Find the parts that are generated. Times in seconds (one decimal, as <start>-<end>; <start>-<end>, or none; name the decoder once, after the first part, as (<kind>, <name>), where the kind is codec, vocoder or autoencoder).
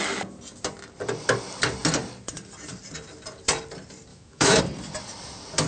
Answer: 4.1-4.6 (autoencoder, DAC-VAE)